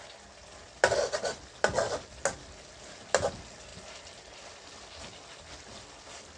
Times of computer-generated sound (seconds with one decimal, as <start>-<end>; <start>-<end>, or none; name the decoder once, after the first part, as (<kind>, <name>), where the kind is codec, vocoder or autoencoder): none